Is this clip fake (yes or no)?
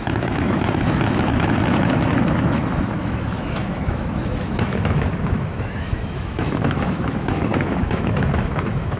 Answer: yes